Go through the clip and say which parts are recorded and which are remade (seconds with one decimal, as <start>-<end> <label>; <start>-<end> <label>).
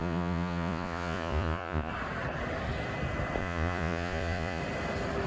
0.0-1.9 remade; 1.9-3.4 recorded; 3.4-4.6 remade; 4.6-5.3 recorded